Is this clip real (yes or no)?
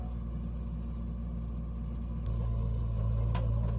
yes